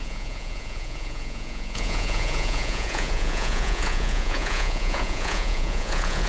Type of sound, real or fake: fake